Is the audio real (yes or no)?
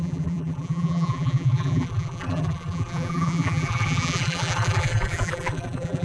no